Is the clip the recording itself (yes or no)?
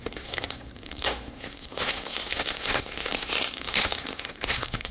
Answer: no